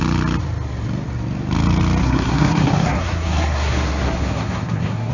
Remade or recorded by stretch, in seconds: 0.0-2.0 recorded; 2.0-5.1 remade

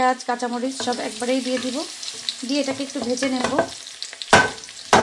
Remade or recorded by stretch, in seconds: 0.0-5.0 recorded

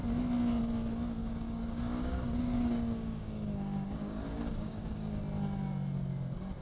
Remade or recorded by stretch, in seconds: 0.0-1.2 recorded; 1.2-5.2 remade; 5.2-6.6 recorded